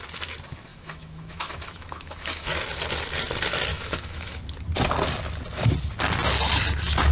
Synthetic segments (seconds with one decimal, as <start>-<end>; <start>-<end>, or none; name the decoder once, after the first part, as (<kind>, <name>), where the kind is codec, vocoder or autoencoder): 0.7-2.6 (autoencoder, DAC-VAE); 3.7-4.4